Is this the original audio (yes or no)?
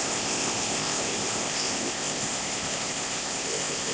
no